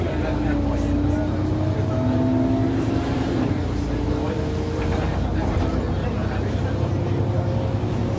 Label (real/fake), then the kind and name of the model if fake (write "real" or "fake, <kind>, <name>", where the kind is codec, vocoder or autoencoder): real